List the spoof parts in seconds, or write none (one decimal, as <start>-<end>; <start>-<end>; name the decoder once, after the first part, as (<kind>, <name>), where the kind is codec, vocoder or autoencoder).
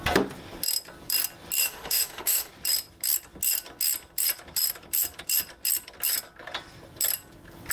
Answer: 1.6-2.5 (autoencoder, DAC-VAE)